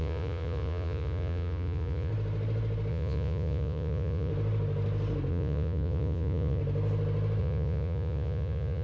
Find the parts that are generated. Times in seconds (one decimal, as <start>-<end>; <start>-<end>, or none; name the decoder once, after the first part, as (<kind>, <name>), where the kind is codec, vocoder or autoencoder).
0.0-2.1 (vocoder, Vocos); 2.9-4.3; 5.3-6.6; 7.4-8.8

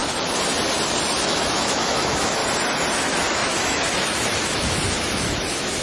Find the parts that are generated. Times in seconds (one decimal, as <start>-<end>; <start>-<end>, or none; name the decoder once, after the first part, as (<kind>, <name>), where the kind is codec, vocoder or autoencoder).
1.2-2.4 (autoencoder, DAC-VAE); 3.0-5.8

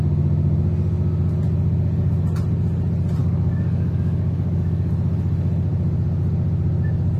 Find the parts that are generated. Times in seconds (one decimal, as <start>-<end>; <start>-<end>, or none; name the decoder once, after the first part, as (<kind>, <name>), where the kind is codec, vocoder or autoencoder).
3.2-4.9 (codec, DAC)